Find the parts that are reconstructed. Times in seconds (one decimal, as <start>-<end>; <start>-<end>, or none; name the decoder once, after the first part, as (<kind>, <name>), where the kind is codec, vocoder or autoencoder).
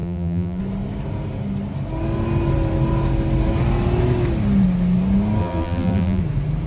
0.0-0.6 (vocoder, BigVGAN v2); 5.4-6.2